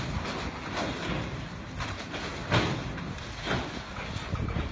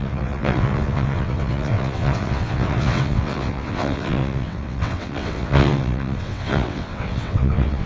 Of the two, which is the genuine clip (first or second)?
first